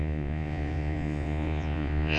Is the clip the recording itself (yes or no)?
no